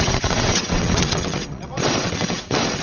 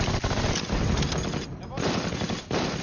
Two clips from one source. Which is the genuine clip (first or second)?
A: second